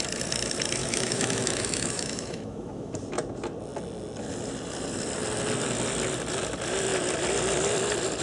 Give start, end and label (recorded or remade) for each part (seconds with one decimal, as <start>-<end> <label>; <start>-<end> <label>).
0.0-0.8 recorded; 0.8-2.9 remade; 2.9-8.2 recorded